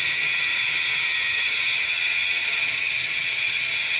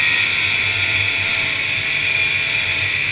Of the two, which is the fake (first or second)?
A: first